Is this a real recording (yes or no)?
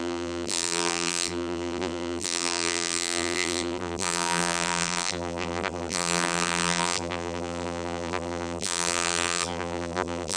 no